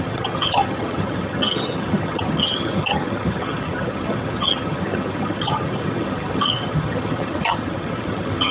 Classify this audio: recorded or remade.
remade